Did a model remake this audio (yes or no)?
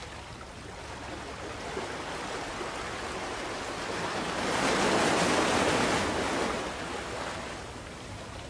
no